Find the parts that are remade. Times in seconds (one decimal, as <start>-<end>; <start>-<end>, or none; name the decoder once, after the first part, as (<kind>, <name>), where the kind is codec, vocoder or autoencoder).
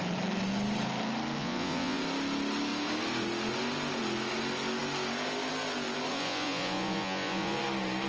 1.4-2.0 (vocoder, Vocos); 6.1-7.6